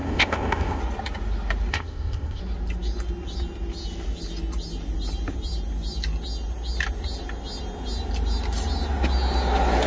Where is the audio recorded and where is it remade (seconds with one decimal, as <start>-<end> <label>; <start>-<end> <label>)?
0.0-0.8 remade; 0.8-1.7 recorded; 1.7-2.4 remade; 2.4-9.9 recorded